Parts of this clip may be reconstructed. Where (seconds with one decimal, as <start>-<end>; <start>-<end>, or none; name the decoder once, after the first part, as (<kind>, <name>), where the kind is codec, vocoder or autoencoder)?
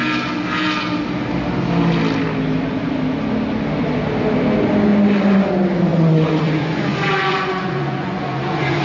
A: 5.9-8.8 (vocoder, Vocos)